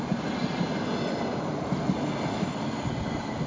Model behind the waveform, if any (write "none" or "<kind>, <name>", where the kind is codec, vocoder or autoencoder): none